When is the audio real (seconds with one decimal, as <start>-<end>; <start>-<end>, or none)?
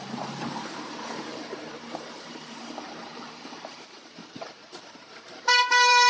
none